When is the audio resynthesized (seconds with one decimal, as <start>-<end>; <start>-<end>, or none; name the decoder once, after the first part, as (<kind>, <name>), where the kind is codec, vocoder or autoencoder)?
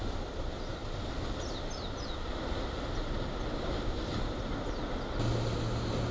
none